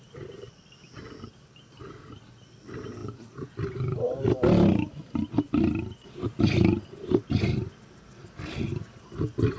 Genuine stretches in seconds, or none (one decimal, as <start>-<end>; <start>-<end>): 0.0-9.6